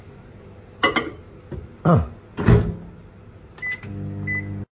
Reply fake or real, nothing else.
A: real